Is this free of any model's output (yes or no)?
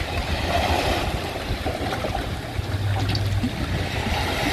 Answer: yes